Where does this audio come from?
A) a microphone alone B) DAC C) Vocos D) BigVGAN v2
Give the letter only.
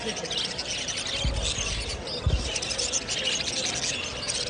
A